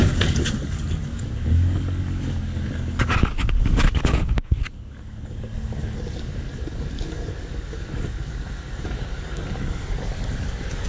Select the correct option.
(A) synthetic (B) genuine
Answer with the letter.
A